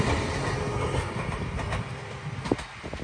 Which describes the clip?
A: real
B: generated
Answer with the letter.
A